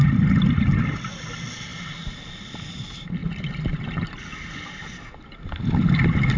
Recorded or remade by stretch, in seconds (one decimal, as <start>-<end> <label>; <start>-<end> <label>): 0.0-6.4 recorded